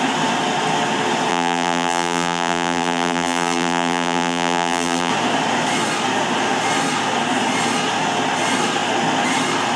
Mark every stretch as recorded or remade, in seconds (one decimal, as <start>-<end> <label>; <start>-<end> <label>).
0.0-1.3 recorded; 1.3-5.1 remade; 5.1-9.8 recorded